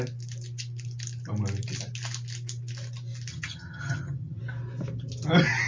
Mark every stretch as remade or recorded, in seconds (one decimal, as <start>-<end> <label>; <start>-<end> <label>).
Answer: 0.0-3.3 recorded; 3.3-4.4 remade; 4.4-5.7 recorded